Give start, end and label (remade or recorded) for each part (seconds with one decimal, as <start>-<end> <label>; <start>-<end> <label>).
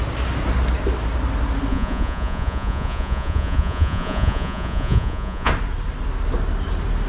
0.0-1.7 recorded; 1.7-5.5 remade; 5.5-7.1 recorded